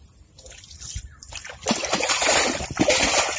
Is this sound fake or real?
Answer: real